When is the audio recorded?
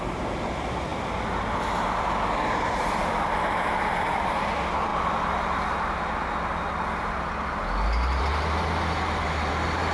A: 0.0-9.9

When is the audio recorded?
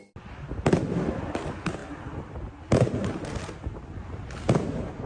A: 0.0-5.1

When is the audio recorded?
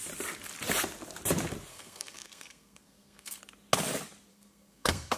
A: 0.0-1.7; 3.4-4.3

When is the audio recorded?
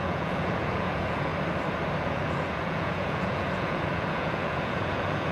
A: 1.3-2.0